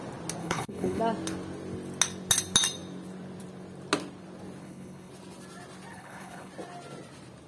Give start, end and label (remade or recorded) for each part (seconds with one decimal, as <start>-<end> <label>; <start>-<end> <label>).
0.0-0.4 recorded; 0.4-1.0 remade; 1.0-4.6 recorded; 4.6-5.1 remade; 5.1-5.9 recorded; 5.9-6.5 remade; 6.5-7.5 recorded